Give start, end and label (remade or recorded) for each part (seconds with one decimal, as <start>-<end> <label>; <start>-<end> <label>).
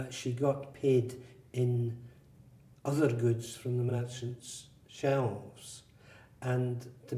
0.0-3.9 recorded; 3.9-4.6 remade; 4.6-7.2 recorded